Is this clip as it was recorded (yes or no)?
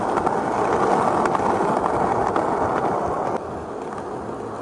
yes